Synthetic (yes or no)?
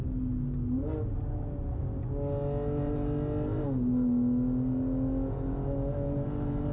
no